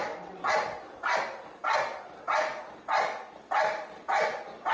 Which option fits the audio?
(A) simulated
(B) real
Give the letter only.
B